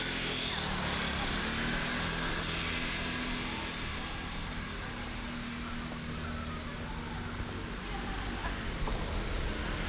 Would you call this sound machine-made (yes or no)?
no